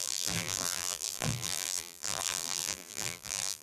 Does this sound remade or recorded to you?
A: remade